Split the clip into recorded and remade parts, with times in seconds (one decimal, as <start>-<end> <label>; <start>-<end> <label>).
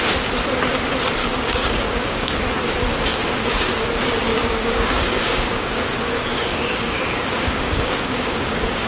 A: 0.0-1.2 recorded; 1.2-2.4 remade; 2.4-3.1 recorded; 3.1-3.7 remade; 3.7-4.3 recorded; 4.3-8.9 remade